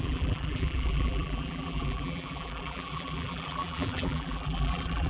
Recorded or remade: remade